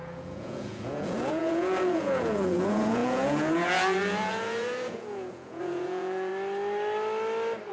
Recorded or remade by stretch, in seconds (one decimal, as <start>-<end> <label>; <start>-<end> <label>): 0.0-6.3 remade; 6.3-7.7 recorded